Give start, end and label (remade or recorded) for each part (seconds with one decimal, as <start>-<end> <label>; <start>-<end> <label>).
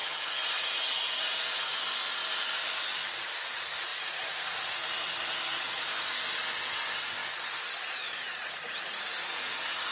0.0-1.8 remade; 1.8-3.9 recorded; 3.9-5.8 remade; 5.8-7.2 recorded; 7.2-9.3 remade; 9.3-9.9 recorded